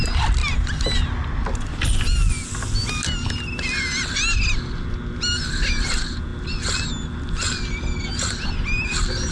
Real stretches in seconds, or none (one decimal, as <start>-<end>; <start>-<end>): 0.0-9.3